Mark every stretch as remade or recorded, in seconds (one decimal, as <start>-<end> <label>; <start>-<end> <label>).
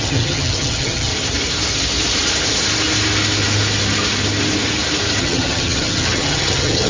0.0-1.1 remade; 1.1-5.2 recorded; 5.2-6.9 remade